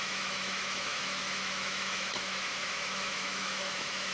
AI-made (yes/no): yes